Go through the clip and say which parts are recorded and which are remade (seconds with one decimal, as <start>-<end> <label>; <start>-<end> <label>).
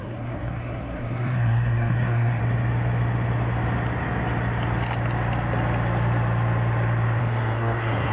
0.0-2.4 remade; 2.4-7.2 recorded; 7.2-8.1 remade